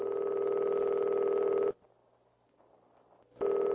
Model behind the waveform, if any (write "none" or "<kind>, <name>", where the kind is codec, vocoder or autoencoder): vocoder, BigVGAN v2